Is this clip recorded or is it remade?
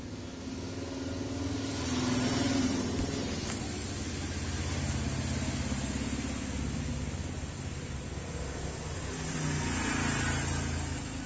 recorded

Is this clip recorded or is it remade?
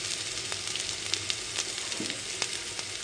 recorded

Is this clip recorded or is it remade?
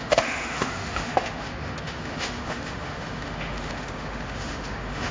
remade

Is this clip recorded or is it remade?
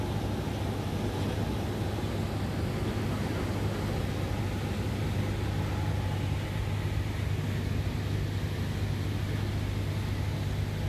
recorded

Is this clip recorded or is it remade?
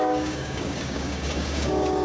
remade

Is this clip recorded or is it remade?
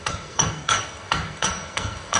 remade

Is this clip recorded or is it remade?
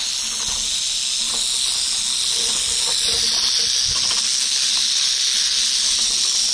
recorded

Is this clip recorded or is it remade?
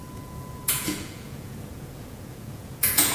remade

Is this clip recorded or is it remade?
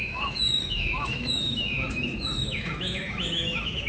remade